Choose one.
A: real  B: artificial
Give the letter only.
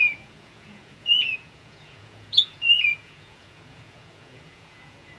B